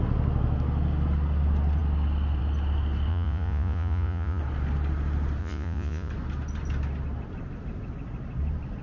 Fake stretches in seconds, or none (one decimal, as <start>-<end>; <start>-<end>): 3.1-4.4; 5.4-6.1